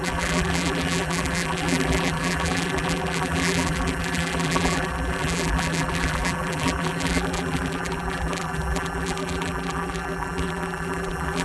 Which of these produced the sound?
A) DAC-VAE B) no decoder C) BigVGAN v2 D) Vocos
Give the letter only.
C